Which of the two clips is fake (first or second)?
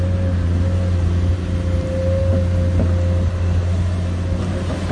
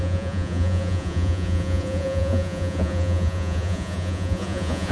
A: second